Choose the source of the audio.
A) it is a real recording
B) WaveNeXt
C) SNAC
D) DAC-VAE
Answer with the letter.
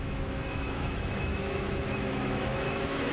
D